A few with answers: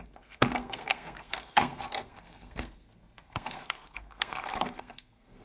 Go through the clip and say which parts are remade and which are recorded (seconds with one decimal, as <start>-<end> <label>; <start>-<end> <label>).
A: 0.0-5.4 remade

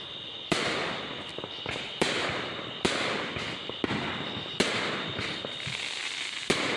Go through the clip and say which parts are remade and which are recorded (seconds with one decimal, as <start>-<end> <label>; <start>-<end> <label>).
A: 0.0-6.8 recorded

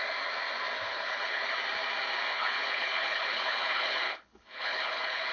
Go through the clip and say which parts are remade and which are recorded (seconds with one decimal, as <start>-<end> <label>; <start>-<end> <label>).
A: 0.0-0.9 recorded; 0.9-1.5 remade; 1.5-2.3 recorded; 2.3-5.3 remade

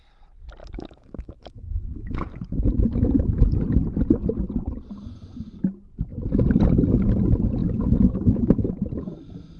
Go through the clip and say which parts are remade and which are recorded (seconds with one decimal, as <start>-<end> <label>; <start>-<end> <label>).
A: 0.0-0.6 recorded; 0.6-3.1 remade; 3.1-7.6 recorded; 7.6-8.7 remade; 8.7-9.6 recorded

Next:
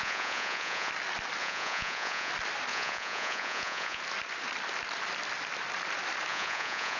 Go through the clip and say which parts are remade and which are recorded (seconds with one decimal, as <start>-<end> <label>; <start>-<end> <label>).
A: 0.0-0.9 remade; 0.9-1.4 recorded; 1.4-2.3 remade; 2.3-2.7 recorded; 2.7-4.0 remade; 4.0-6.3 recorded; 6.3-7.0 remade

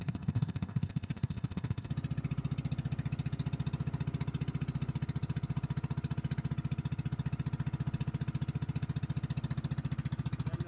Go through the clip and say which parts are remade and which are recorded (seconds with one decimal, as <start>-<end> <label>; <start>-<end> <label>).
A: 0.0-1.9 remade; 1.9-10.7 recorded

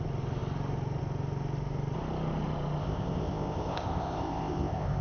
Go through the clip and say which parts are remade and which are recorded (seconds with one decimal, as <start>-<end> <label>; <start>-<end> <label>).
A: 0.0-2.8 recorded; 2.8-5.0 remade

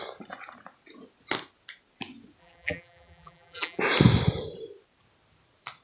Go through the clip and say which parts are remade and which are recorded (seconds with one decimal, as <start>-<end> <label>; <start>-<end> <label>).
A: 0.0-2.4 recorded; 2.4-3.8 remade; 3.8-5.8 recorded